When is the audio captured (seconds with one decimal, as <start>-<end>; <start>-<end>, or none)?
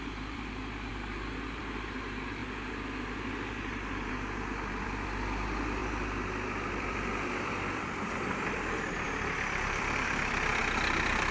2.4-4.1; 5.8-6.6